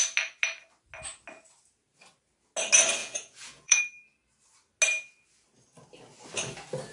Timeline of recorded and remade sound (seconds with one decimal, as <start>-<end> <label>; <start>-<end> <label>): 0.0-3.0 recorded; 3.0-3.8 remade; 3.8-6.9 recorded